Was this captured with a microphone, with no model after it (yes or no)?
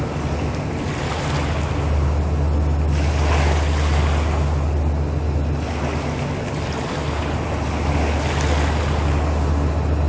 yes